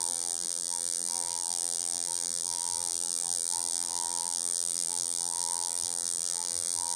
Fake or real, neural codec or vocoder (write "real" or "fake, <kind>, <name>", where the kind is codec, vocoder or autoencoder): fake, vocoder, BigVGAN v2